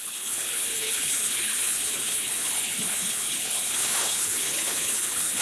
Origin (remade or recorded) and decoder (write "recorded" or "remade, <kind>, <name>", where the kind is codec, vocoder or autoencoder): remade, codec, HILCodec